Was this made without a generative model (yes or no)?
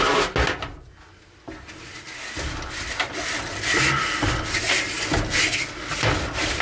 yes